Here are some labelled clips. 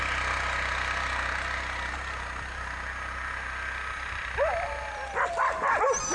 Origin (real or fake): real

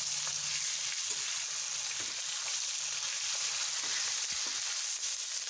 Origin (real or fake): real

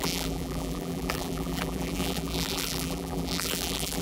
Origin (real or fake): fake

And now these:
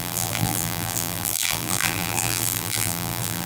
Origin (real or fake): fake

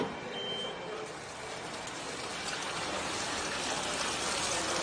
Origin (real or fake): real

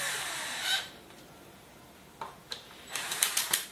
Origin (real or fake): fake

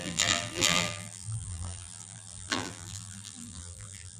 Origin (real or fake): fake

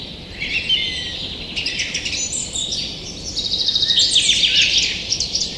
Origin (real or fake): real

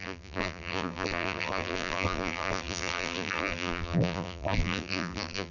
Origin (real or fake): fake